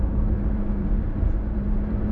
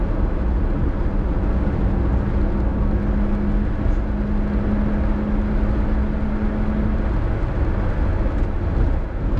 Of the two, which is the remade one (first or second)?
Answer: first